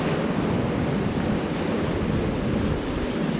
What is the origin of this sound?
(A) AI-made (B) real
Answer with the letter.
B